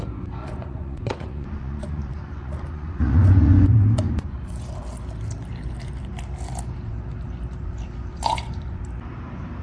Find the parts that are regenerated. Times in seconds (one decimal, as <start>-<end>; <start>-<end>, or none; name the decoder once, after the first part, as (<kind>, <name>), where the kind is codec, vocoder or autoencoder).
0.4-4.7 (vocoder, Vocos); 8.1-8.8